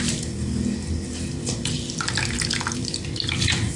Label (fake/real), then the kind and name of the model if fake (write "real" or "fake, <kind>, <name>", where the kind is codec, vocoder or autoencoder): real